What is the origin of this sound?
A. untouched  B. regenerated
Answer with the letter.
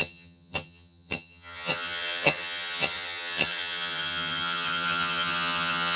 B